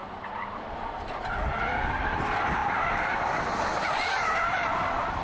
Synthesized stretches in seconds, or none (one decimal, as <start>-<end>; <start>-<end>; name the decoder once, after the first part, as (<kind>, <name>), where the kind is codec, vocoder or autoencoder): 0.0-0.6 (vocoder, BigVGAN v2); 1.5-2.2